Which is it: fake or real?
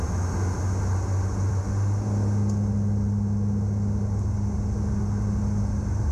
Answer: real